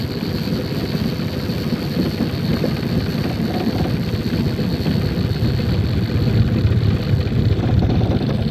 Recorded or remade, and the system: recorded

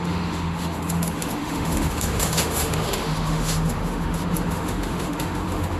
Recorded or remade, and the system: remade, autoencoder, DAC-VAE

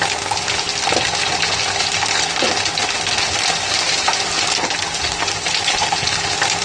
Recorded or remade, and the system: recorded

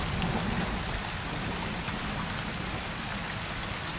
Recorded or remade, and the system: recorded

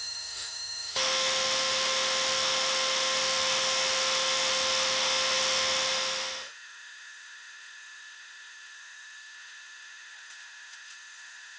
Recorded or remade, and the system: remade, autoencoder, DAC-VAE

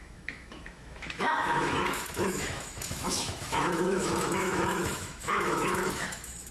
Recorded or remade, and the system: remade, autoencoder, DAC-VAE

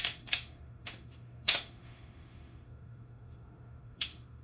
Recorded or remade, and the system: remade, autoencoder, DAC-VAE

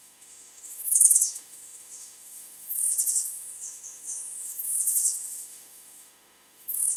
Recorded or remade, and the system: remade, autoencoder, DAC-VAE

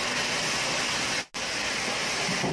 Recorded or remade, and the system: recorded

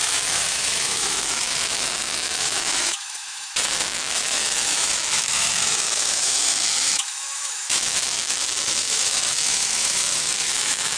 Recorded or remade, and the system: remade, autoencoder, DAC-VAE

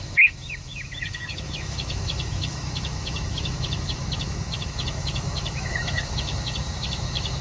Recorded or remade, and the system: remade, autoencoder, DAC-VAE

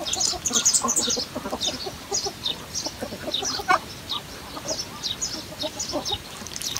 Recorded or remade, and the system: recorded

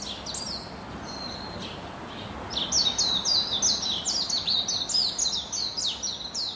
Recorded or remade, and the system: recorded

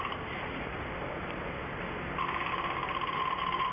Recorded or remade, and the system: recorded